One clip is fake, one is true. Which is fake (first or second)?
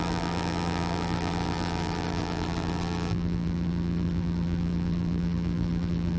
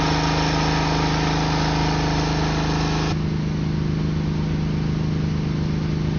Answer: first